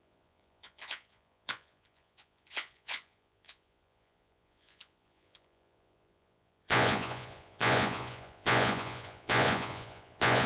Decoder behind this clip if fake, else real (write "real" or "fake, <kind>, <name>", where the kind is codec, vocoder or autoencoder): fake, vocoder, Vocos